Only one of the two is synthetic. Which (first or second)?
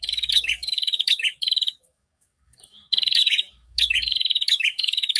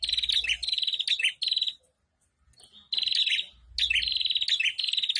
first